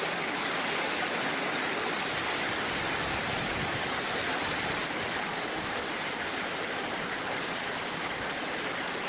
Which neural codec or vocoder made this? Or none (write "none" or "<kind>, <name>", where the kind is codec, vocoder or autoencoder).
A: none